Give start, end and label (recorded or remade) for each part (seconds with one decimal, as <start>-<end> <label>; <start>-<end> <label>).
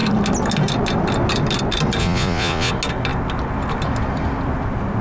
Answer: 0.0-2.0 recorded; 2.0-2.7 remade; 2.7-5.0 recorded